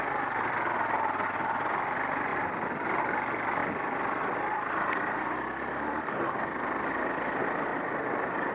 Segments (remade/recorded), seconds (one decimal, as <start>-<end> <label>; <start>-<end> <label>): 0.0-2.3 recorded; 2.3-3.0 remade; 3.0-3.6 recorded; 3.6-6.3 remade; 6.3-8.5 recorded